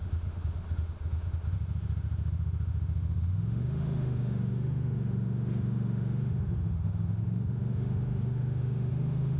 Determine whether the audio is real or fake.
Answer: fake